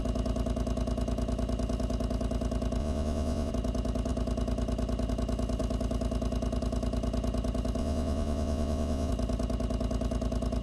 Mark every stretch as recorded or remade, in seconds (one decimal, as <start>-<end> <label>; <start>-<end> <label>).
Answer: 0.0-2.8 recorded; 2.8-3.5 remade; 3.5-7.8 recorded; 7.8-9.1 remade; 9.1-10.6 recorded